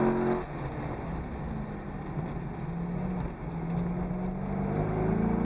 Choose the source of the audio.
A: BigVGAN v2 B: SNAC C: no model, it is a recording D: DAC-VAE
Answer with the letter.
C